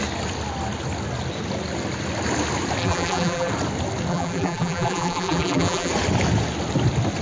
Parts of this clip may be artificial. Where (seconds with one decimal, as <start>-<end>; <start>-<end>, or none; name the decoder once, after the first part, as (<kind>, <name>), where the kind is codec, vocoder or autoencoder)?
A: 2.8-3.5 (vocoder, BigVGAN v2); 4.1-5.9